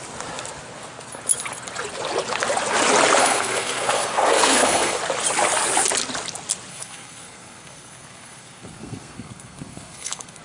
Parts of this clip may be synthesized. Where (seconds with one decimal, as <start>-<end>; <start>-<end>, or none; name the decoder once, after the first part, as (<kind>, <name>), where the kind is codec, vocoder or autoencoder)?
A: 3.2-5.0 (codec, SNAC); 6.7-10.4